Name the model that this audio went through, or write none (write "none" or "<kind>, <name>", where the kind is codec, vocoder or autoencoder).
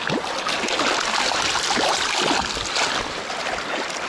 none